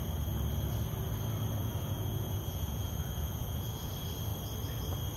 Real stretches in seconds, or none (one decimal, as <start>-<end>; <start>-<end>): 0.0-1.6; 3.9-5.2